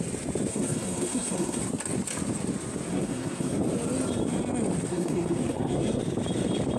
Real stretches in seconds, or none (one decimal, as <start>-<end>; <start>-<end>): 0.0-0.5; 1.6-2.9; 3.6-4.9; 6.0-6.8